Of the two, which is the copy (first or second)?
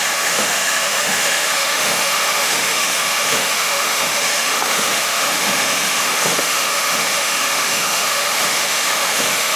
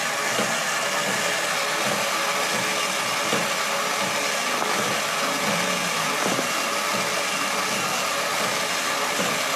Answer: first